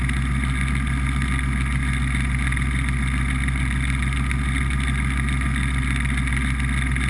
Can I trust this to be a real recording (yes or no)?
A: yes